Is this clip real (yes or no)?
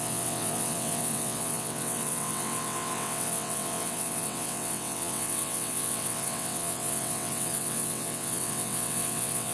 no